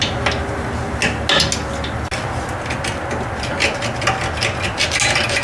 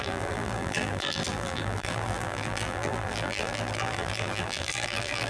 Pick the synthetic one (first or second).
second